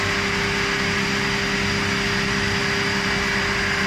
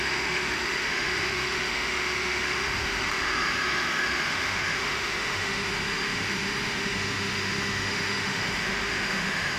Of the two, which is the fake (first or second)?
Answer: second